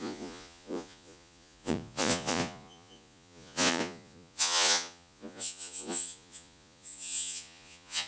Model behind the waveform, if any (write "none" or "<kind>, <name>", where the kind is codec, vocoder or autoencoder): vocoder, Vocos